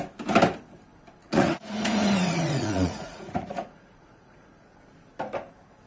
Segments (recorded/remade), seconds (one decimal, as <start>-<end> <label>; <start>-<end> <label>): 0.0-1.2 recorded; 1.2-4.7 remade; 4.7-5.9 recorded